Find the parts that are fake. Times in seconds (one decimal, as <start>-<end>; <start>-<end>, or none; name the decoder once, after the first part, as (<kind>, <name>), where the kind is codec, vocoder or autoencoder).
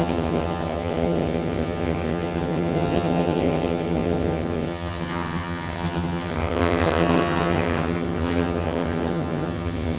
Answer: 0.0-10.0 (vocoder, HiFi-GAN)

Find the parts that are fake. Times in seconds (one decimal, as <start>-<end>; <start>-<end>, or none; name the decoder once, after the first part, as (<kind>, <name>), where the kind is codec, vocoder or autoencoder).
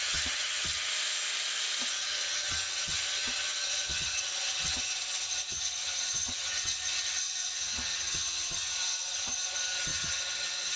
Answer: 0.0-0.9 (vocoder, HiFi-GAN); 1.9-10.8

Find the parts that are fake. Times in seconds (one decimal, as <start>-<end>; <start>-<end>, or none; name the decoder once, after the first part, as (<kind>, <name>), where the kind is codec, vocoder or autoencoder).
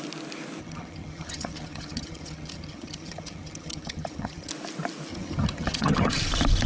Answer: 0.6-4.5 (vocoder, HiFi-GAN); 5.1-6.1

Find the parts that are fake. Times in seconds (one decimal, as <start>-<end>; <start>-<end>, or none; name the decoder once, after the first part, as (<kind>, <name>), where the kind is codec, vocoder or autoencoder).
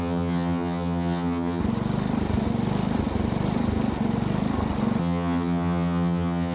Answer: 0.0-1.6 (vocoder, HiFi-GAN); 5.0-6.5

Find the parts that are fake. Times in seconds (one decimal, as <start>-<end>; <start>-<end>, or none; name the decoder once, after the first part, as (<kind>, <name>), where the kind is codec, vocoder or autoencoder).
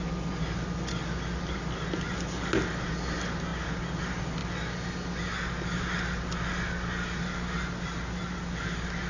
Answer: none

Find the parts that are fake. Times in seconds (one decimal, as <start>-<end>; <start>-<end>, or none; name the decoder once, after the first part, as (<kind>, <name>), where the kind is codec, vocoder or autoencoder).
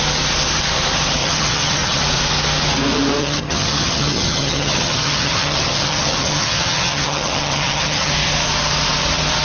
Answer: 1.2-2.0 (vocoder, HiFi-GAN); 3.2-8.1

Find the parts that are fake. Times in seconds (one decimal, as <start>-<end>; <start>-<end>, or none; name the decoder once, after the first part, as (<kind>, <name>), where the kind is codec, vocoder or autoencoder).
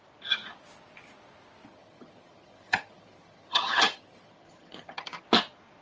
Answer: 1.7-5.2 (vocoder, HiFi-GAN)